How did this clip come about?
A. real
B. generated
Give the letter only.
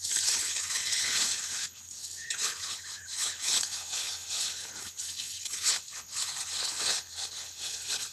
B